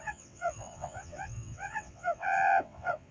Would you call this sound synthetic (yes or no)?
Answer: yes